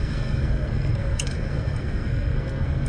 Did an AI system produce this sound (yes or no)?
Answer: yes